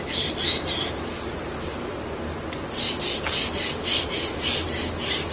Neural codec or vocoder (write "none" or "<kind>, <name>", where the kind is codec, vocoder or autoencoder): vocoder, BigVGAN v2